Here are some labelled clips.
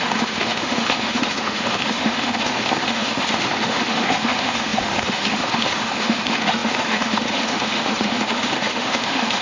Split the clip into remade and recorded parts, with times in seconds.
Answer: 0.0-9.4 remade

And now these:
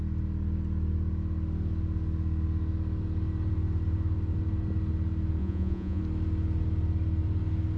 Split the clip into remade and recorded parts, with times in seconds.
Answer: 0.0-5.4 recorded; 5.4-6.0 remade; 6.0-7.8 recorded

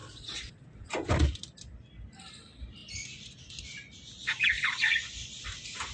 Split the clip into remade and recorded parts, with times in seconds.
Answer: 0.0-0.9 remade; 0.9-4.2 recorded; 4.2-5.0 remade; 5.0-5.9 recorded

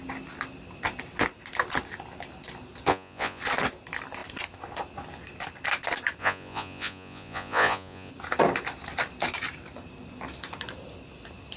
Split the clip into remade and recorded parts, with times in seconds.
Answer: 0.0-2.9 recorded; 2.9-3.4 remade; 3.4-6.2 recorded; 6.2-8.1 remade; 8.1-11.6 recorded

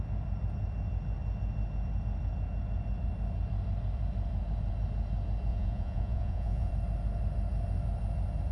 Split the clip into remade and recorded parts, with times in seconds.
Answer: 0.0-5.5 recorded; 5.5-6.7 remade; 6.7-8.5 recorded

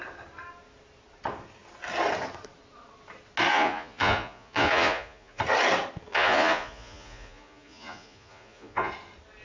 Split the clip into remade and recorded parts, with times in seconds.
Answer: 0.0-3.5 recorded; 3.5-5.4 remade; 5.4-6.1 recorded; 6.1-8.9 remade; 8.9-9.4 recorded

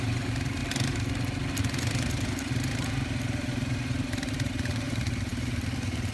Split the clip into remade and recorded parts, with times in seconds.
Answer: 0.0-0.6 remade; 0.6-1.6 recorded; 1.6-6.1 remade